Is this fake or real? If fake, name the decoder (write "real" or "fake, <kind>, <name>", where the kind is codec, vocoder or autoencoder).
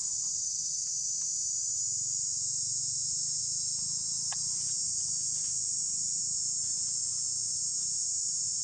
real